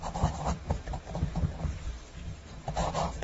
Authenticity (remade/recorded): remade